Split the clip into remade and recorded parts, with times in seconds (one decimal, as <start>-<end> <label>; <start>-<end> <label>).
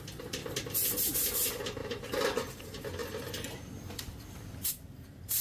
0.0-5.4 recorded